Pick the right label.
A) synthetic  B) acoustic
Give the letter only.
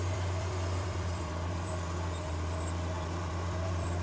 A